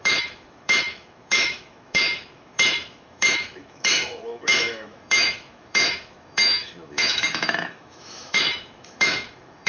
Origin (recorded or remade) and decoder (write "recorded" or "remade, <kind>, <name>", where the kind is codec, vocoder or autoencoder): remade, autoencoder, DAC-VAE